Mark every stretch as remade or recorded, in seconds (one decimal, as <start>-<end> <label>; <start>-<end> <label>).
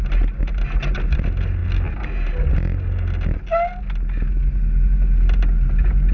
0.0-6.1 recorded